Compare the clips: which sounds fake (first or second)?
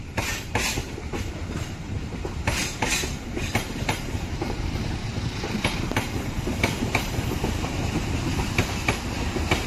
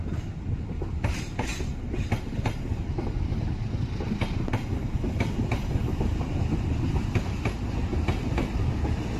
first